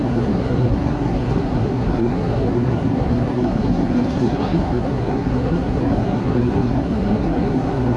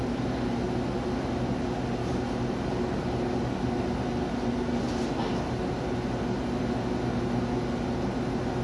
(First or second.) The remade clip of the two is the first